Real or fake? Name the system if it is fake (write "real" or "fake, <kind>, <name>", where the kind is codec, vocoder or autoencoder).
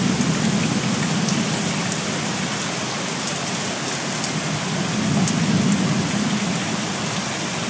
real